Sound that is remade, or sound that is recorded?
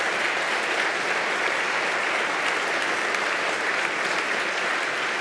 recorded